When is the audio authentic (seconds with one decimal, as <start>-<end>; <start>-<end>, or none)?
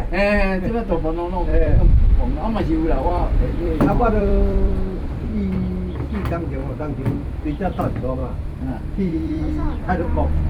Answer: 0.0-1.5; 4.7-8.2